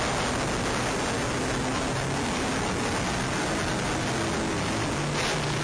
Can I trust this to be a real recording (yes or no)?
yes